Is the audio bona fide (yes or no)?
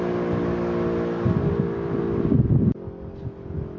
yes